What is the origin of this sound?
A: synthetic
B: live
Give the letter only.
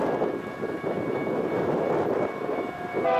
B